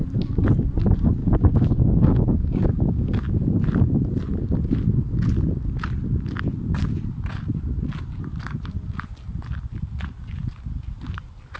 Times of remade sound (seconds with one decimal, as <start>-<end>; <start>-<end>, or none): 1.2-3.3